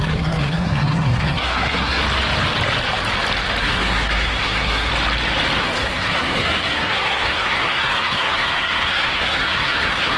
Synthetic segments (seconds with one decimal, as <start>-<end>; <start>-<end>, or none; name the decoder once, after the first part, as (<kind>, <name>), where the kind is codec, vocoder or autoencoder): 0.0-2.0 (codec, SNAC); 3.6-4.9; 5.6-10.2